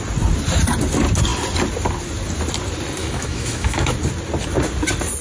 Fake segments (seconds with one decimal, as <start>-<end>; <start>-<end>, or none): 3.0-3.9